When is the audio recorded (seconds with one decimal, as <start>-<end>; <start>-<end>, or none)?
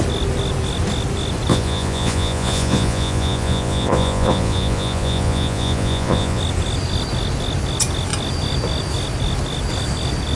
0.0-1.5; 6.4-10.4